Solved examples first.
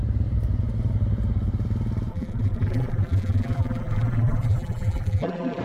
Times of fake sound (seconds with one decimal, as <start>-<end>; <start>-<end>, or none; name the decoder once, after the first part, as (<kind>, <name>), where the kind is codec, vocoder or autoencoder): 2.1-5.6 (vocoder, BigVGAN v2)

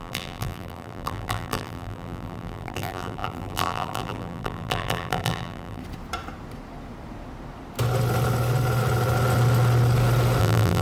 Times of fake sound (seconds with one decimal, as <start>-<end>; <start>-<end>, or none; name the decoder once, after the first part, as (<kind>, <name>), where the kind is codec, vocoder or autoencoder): 0.0-5.8 (vocoder, BigVGAN v2); 10.4-10.8

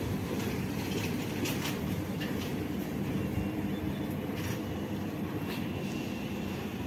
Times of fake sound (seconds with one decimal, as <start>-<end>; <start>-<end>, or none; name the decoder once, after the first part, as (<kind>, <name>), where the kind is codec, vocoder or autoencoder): 0.0-2.5 (vocoder, BigVGAN v2)